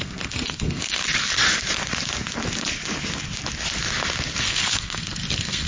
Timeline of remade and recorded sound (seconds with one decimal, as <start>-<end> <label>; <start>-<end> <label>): 0.0-1.0 remade; 1.0-4.4 recorded; 4.4-5.7 remade